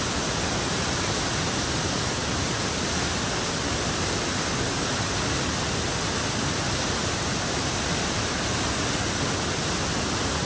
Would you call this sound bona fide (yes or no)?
yes